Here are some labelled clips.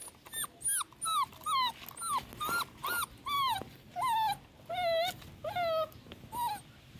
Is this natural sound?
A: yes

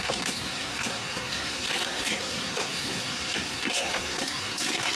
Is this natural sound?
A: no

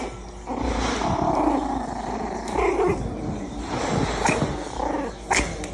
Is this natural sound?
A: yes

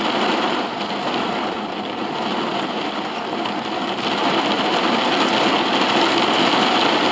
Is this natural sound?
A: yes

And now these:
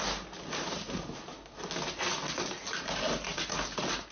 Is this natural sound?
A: yes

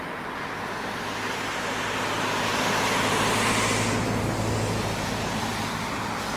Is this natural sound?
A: yes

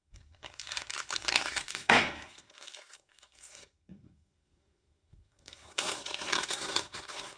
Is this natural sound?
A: no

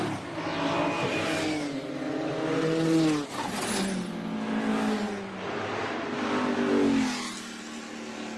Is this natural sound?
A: yes